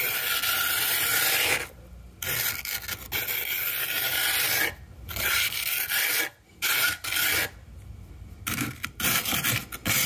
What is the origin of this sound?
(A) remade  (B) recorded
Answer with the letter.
B